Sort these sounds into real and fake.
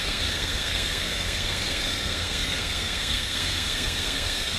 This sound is fake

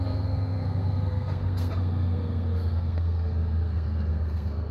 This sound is fake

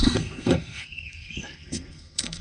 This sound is fake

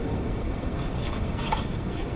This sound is fake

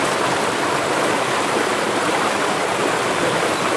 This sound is real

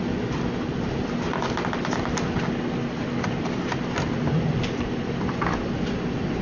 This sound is real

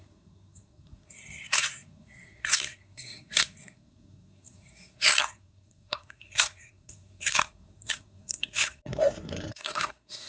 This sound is fake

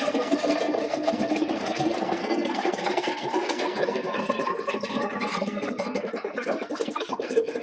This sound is fake